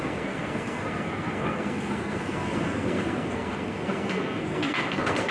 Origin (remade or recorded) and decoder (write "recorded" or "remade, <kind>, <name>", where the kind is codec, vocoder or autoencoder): remade, codec, SNAC